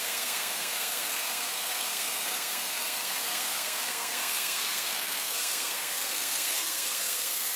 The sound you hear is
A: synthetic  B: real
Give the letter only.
A